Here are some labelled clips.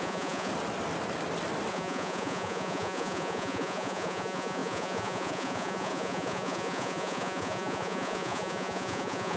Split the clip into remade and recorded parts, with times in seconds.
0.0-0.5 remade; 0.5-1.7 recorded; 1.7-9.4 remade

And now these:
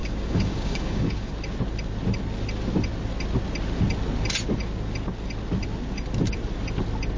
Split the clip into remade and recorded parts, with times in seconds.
0.0-1.3 remade; 1.3-7.2 recorded

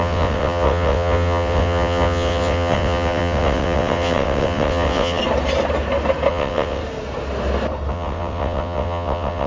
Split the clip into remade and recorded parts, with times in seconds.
0.0-5.2 remade; 5.2-6.3 recorded; 6.3-6.8 remade; 6.8-7.9 recorded; 7.9-9.5 remade

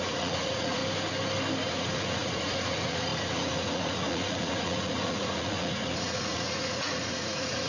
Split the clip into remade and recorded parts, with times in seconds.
0.0-0.8 remade; 0.8-1.7 recorded; 1.7-7.7 remade

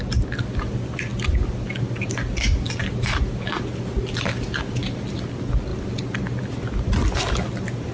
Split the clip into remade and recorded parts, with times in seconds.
0.0-7.9 recorded

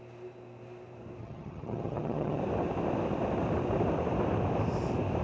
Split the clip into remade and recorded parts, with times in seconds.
0.0-1.2 recorded; 1.2-2.4 remade; 2.4-5.2 recorded

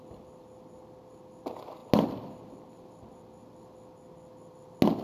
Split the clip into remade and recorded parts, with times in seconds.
0.0-5.0 recorded